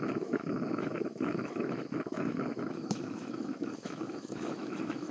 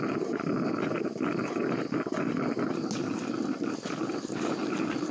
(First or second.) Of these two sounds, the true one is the second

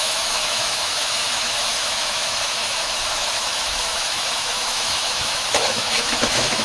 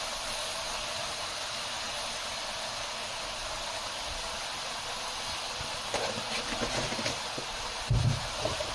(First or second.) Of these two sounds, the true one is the second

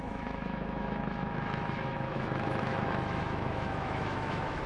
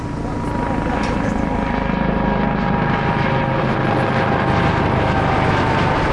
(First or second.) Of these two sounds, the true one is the second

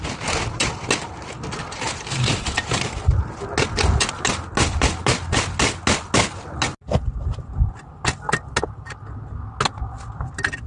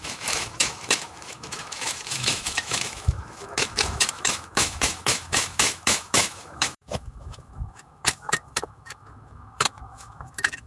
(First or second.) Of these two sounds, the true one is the first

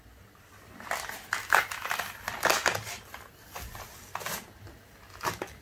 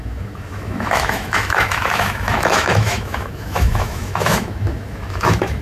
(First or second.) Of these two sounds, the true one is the first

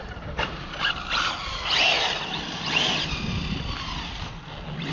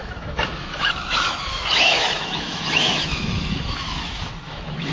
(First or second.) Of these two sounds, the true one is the first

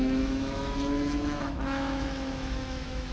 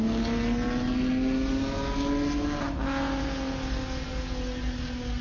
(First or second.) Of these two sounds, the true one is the second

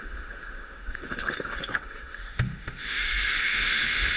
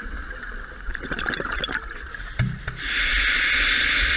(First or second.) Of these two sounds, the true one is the second